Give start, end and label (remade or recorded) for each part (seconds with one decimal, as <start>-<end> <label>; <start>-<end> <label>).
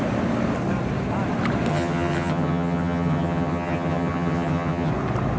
0.0-1.7 recorded; 1.7-4.9 remade; 4.9-5.4 recorded